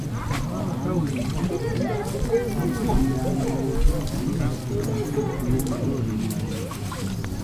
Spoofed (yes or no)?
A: no